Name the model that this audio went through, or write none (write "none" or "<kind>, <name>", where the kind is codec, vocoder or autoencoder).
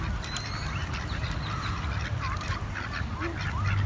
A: none